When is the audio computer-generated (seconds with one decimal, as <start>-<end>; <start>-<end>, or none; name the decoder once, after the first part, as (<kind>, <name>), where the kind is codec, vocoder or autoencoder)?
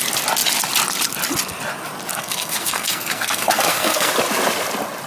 2.1-4.1 (codec, SNAC)